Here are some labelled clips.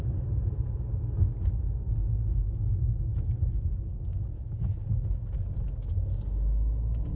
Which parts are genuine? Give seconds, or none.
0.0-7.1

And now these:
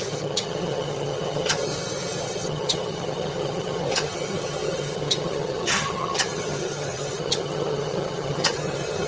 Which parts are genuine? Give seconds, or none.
1.7-2.2

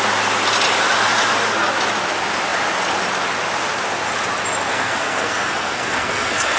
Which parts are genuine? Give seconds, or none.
0.0-4.7

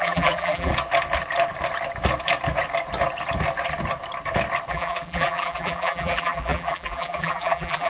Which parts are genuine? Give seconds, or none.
0.7-4.7

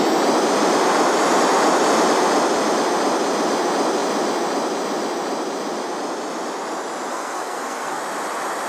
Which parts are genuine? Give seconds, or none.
0.0-7.1; 8.0-8.7

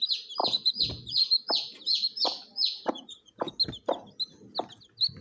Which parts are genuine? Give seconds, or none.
0.0-0.4; 3.5-5.2